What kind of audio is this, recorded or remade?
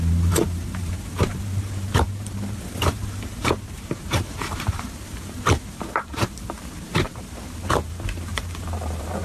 remade